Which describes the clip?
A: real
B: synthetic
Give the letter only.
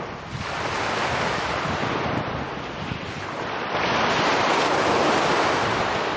A